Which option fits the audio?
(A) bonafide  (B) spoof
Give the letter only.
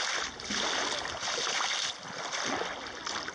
A